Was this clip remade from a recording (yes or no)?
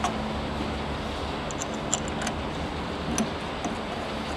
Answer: no